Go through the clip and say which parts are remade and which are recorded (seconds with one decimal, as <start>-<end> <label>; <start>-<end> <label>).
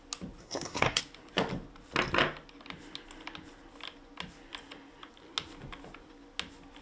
0.0-0.4 recorded; 0.4-1.0 remade; 1.0-6.8 recorded